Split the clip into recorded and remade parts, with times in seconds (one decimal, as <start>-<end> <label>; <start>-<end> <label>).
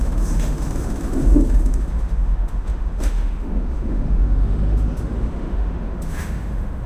0.0-6.9 remade